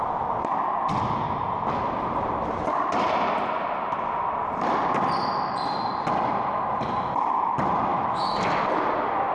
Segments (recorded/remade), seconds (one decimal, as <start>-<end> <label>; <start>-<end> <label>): 0.0-7.9 recorded; 7.9-8.4 remade; 8.4-9.3 recorded